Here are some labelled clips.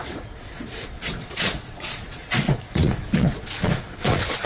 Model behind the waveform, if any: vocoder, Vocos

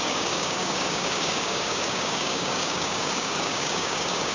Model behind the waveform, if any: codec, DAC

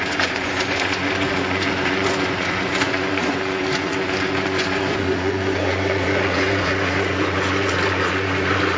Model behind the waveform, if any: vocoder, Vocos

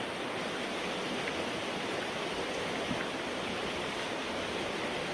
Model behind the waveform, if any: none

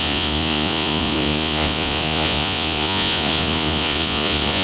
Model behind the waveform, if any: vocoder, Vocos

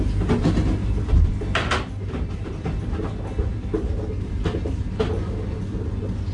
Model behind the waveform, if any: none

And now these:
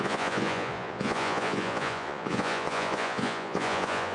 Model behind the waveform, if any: vocoder, Vocos